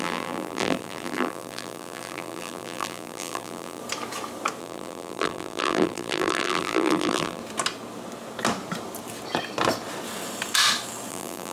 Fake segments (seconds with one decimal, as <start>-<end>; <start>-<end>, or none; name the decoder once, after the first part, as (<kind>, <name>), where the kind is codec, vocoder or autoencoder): 0.0-3.8 (vocoder, BigVGAN v2); 4.6-7.4; 11.1-11.5